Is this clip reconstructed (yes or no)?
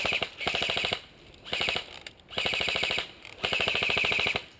no